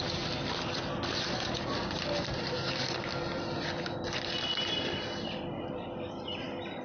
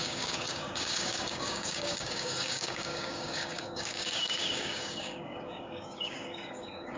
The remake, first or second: second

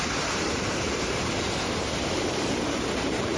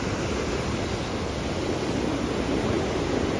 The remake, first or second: first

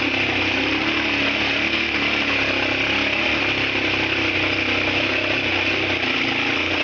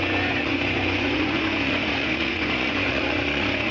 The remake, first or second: second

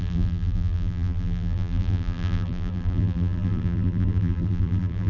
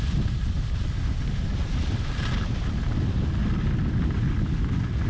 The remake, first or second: first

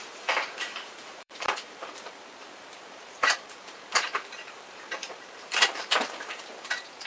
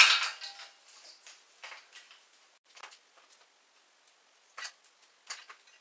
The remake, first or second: first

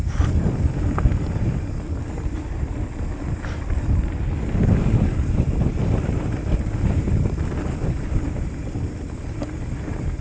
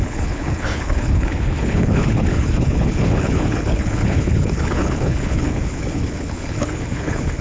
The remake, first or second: second